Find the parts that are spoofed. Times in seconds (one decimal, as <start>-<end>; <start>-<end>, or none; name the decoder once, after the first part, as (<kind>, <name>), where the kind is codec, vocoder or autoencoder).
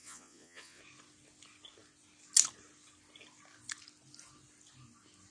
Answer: 0.0-0.8 (vocoder, Vocos)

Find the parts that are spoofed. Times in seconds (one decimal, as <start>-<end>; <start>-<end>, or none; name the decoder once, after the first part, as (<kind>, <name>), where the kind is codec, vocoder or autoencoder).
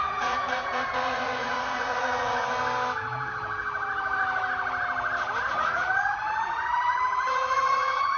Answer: 0.0-2.5 (vocoder, Vocos); 5.5-8.2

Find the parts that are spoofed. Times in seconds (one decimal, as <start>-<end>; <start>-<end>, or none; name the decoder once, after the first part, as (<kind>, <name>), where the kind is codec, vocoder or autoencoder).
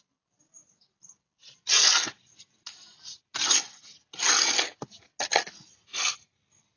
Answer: none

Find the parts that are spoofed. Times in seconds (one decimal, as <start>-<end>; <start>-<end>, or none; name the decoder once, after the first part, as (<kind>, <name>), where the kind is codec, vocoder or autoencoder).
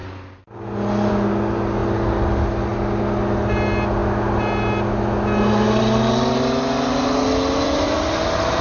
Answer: none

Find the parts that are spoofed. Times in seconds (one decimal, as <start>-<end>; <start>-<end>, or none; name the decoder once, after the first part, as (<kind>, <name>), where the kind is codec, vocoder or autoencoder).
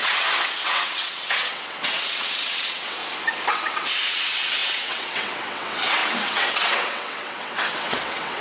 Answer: 0.0-3.0 (vocoder, WaveNeXt); 3.5-8.4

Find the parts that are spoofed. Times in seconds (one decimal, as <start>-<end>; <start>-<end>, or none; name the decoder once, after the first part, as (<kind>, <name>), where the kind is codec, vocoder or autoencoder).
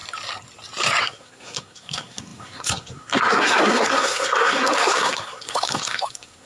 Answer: 1.0-6.5 (codec, SNAC)